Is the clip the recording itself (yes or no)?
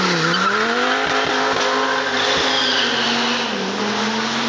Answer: yes